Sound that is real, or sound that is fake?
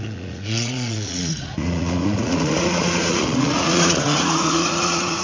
fake